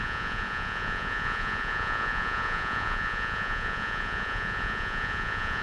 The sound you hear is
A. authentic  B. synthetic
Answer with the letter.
B